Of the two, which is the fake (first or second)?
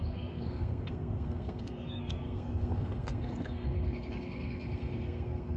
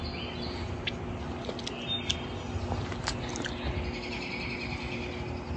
first